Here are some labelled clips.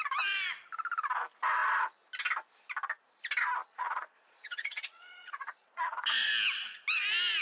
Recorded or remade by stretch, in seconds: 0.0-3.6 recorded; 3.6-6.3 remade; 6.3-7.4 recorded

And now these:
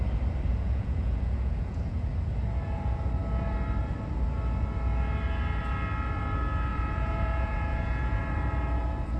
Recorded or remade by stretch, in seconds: 0.0-0.5 recorded; 0.5-2.1 remade; 2.1-6.7 recorded; 6.7-8.2 remade; 8.2-9.2 recorded